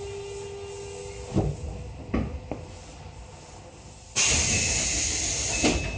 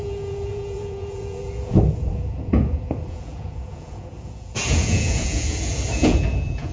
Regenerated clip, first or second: second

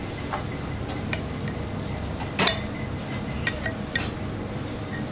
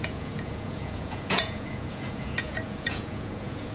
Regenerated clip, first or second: second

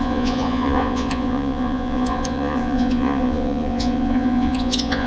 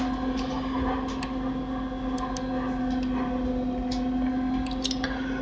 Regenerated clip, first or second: first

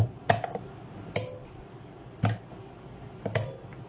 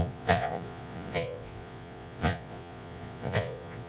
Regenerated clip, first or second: second